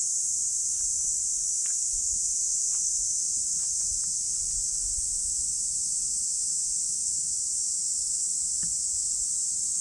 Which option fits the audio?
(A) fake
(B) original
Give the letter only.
B